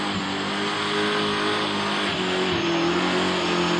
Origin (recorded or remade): recorded